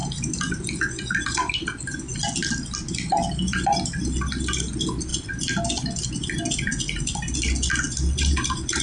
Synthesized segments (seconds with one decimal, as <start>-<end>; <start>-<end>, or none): none